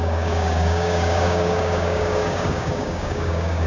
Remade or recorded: remade